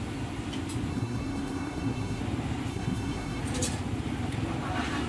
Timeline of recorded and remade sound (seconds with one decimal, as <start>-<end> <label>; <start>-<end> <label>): 0.0-0.9 recorded; 0.9-2.2 remade; 2.2-2.7 recorded; 2.7-3.4 remade; 3.4-5.1 recorded